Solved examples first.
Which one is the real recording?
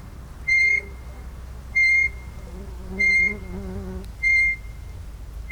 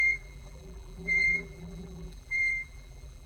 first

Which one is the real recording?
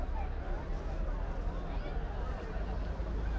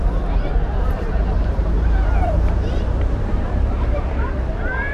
first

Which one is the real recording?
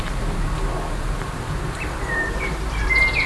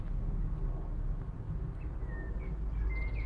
second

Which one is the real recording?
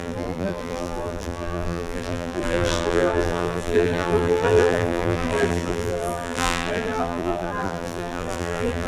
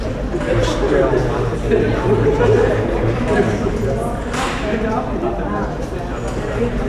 second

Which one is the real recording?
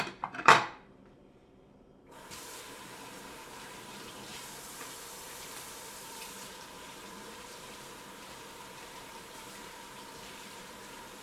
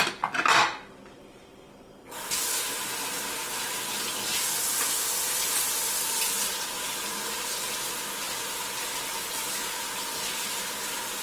second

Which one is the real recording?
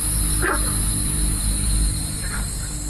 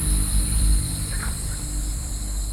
first